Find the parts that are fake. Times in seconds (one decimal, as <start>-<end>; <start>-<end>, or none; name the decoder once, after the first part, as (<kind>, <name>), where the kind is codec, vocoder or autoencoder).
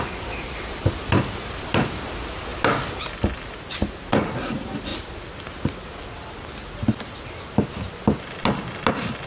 0.0-2.5 (vocoder, BigVGAN v2); 3.1-4.9; 8.9-9.3